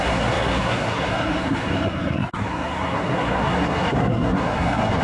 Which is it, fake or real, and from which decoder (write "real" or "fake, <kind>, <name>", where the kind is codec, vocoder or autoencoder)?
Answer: fake, codec, SNAC